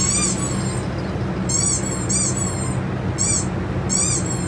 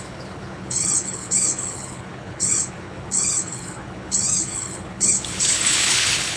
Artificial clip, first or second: second